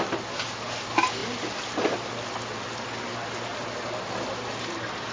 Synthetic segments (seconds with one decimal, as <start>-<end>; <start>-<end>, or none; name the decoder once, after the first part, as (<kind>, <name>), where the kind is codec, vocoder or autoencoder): none